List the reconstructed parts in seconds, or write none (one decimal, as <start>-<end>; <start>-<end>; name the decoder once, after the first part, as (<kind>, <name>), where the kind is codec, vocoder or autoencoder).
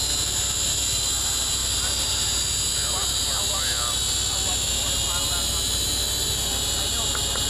none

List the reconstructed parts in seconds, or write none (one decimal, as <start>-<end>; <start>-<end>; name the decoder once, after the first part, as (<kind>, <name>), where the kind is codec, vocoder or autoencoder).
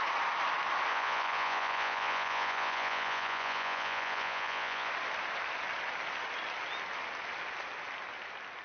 0.9-4.9 (vocoder, Vocos)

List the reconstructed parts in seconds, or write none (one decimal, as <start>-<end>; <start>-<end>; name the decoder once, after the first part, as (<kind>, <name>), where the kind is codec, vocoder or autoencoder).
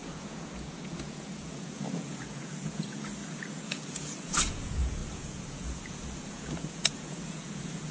0.0-7.9 (vocoder, Vocos)